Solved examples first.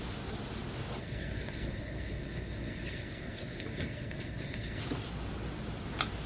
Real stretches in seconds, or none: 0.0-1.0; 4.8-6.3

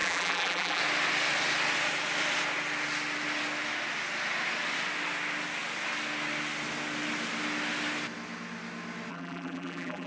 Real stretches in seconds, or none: 0.8-9.1

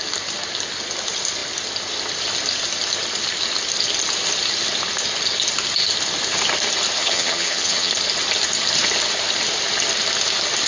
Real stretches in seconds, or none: 0.0-7.0; 7.9-10.7

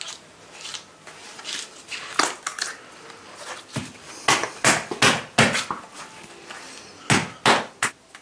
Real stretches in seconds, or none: 0.0-8.2

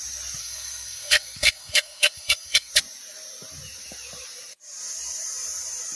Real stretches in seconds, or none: 0.0-0.4; 2.7-6.0

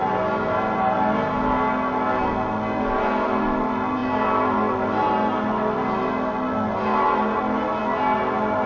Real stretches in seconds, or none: 0.0-8.7

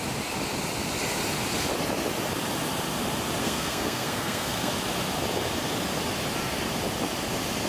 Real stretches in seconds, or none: 0.0-3.4; 4.7-7.7

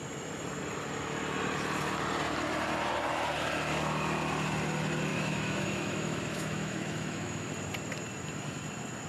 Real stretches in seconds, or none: 0.0-5.1; 7.5-9.1